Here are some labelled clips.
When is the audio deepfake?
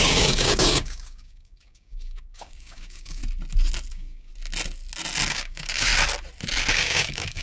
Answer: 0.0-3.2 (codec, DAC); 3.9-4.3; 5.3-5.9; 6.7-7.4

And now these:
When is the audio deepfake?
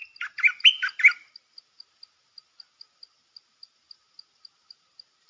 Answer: none